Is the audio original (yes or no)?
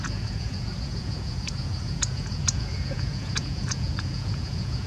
no